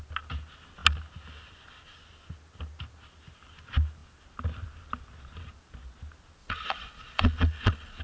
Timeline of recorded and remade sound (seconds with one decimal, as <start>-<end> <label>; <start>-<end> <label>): 0.0-6.4 recorded; 6.4-8.0 remade